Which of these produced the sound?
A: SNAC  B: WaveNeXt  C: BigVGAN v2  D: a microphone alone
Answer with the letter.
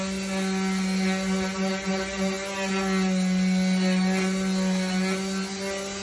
D